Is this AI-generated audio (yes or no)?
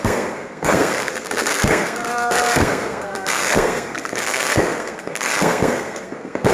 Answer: yes